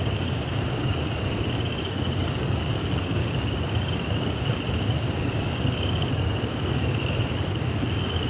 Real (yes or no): no